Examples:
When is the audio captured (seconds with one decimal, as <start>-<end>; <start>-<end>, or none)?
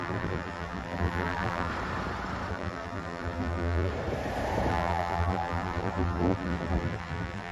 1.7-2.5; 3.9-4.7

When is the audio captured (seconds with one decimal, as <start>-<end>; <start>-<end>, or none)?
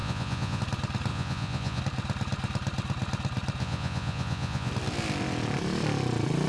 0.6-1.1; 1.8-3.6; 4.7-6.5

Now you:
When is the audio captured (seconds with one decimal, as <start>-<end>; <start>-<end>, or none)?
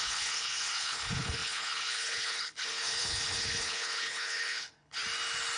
5.0-5.6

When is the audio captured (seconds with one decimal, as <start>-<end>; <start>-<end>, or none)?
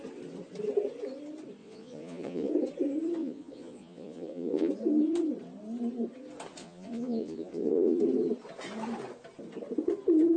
0.0-1.6; 2.5-3.2; 4.7-6.6; 8.0-10.4